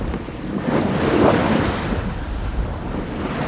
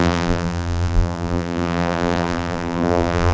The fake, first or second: second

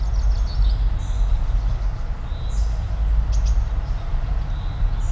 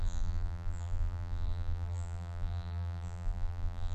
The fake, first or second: second